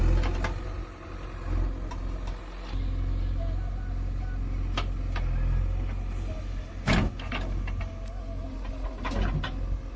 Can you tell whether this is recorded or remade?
recorded